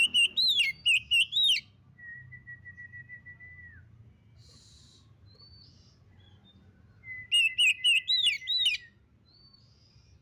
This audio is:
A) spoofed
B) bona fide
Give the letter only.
B